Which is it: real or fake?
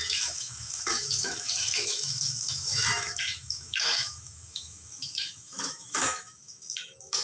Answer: fake